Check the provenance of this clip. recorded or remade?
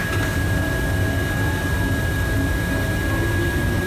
recorded